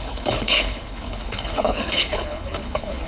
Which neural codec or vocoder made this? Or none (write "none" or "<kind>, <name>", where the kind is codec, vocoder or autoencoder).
codec, HILCodec